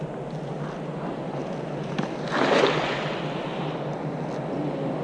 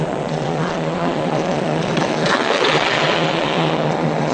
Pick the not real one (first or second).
second